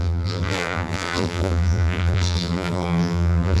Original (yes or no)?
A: no